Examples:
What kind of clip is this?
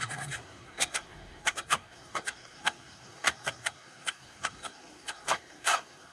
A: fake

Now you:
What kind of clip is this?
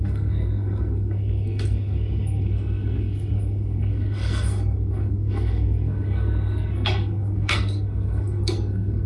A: fake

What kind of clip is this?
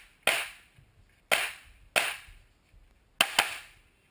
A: real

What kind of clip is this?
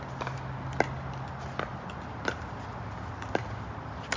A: real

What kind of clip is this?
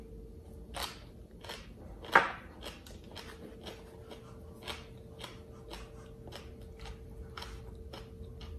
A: real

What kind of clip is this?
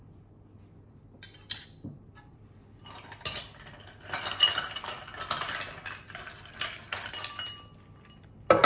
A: real